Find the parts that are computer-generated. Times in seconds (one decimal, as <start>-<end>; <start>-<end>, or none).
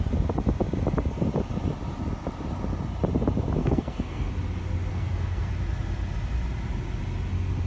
3.6-4.3; 4.9-5.5